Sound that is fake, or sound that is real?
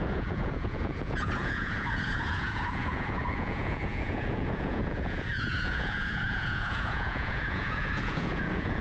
fake